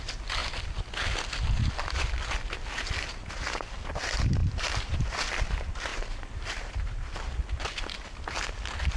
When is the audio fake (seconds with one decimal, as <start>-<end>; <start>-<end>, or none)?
4.4-5.1; 5.9-7.3